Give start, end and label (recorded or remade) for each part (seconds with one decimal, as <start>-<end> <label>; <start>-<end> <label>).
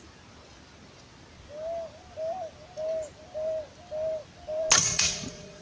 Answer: 0.0-4.8 recorded; 4.8-5.6 remade